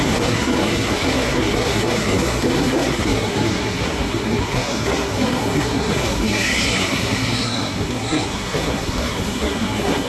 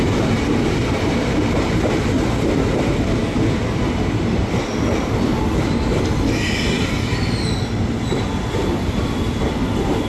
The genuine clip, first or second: second